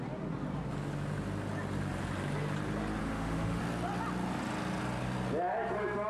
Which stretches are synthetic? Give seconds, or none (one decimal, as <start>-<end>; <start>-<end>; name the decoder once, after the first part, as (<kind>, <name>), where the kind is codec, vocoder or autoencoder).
3.0-3.6 (autoencoder, DAC-VAE)